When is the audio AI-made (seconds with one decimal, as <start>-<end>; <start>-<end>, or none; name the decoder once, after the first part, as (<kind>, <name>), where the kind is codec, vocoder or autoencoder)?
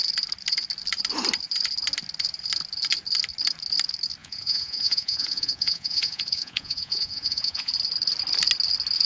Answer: 4.2-7.7 (vocoder, Vocos)